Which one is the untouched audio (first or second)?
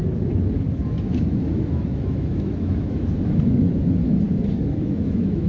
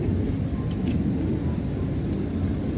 second